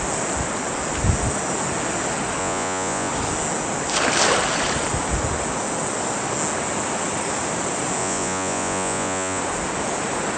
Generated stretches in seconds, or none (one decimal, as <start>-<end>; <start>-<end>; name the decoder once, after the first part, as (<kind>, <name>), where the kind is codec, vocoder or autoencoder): 2.4-3.1 (vocoder, Vocos); 8.0-9.4